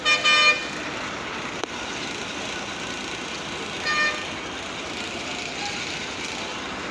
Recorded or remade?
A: recorded